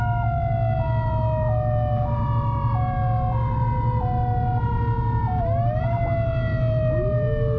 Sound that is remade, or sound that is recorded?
recorded